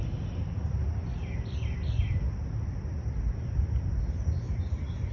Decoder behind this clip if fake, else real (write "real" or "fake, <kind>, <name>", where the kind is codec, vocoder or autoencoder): real